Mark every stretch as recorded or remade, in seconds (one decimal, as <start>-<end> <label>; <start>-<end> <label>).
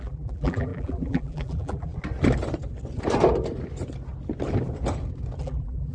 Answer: 0.0-1.9 remade; 1.9-5.4 recorded; 5.4-5.9 remade